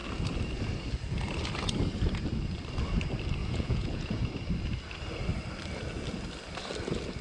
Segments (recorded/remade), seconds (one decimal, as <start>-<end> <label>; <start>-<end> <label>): 0.0-3.4 recorded; 3.4-4.3 remade; 4.3-7.2 recorded